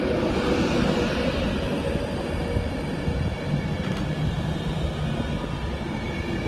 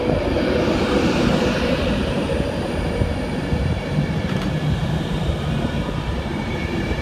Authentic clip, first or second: first